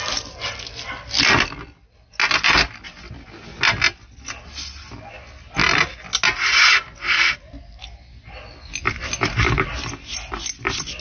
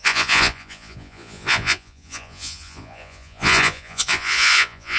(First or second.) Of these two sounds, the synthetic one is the second